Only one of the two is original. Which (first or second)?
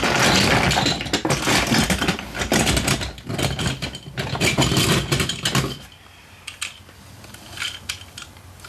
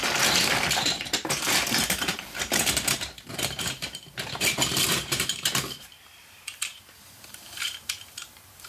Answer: first